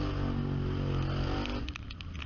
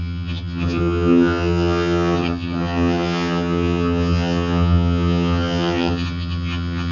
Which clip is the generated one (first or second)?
second